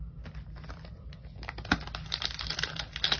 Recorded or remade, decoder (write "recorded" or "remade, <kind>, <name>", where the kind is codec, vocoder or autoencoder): recorded